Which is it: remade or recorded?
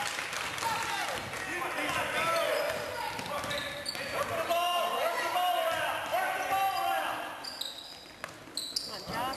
recorded